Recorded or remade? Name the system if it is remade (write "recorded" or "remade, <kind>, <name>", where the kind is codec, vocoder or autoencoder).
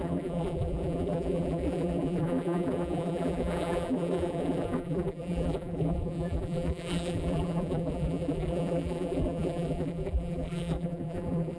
remade, vocoder, BigVGAN v2